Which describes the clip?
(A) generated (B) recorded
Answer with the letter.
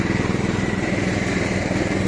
A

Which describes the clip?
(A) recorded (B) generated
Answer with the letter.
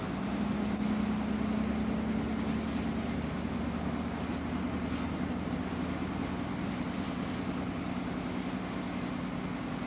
A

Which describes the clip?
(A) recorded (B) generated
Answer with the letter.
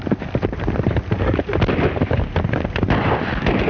A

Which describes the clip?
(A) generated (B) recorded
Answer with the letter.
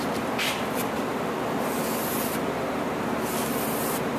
B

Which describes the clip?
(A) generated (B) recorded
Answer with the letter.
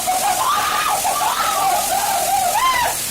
B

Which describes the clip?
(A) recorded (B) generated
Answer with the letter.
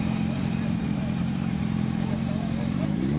B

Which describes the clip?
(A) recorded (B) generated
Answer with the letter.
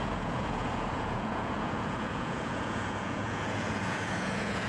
B